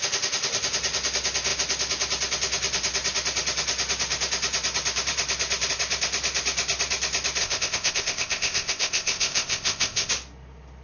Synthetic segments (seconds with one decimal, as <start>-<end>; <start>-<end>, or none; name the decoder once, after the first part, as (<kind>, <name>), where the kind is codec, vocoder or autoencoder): 7.4-10.1 (codec, ZipCodec)